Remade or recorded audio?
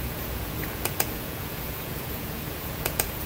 remade